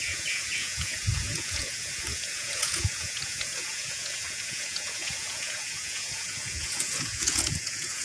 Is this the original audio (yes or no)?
no